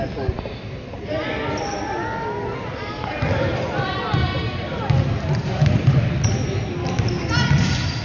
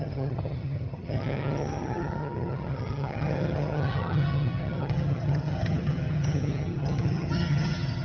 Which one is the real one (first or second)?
first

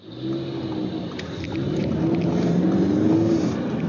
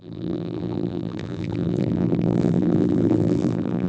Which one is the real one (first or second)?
first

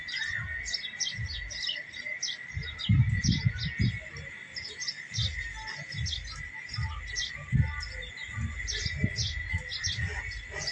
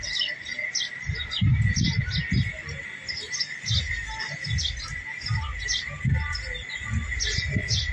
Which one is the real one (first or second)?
first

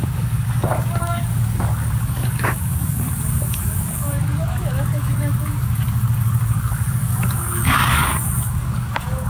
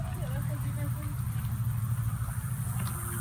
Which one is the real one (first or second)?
second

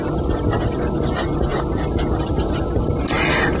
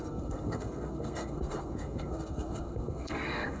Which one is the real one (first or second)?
first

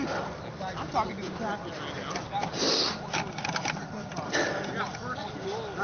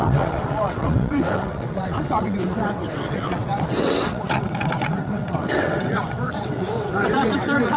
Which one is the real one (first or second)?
first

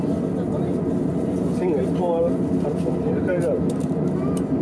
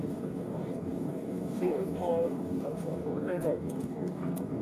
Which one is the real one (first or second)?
first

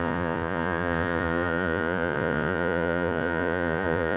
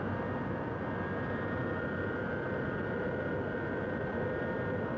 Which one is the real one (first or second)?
second